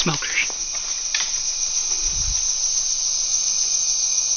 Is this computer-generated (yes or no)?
no